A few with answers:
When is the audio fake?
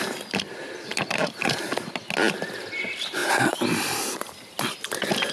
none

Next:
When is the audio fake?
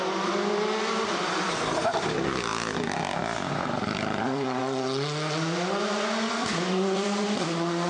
0.0-4.6 (vocoder, BigVGAN v2); 6.3-7.9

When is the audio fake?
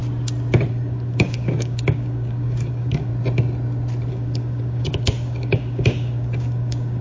0.7-3.1 (codec, DAC); 4.1-7.0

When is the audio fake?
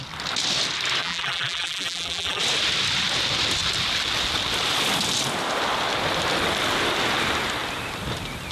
1.0-2.4 (vocoder, BigVGAN v2)